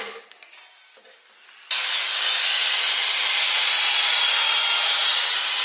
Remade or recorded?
remade